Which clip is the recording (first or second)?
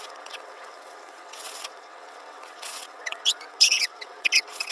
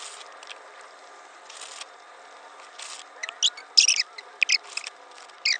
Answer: second